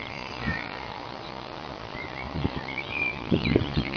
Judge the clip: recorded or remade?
remade